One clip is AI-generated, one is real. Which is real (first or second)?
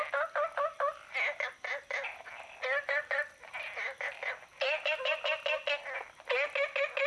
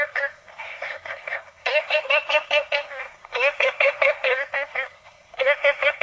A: first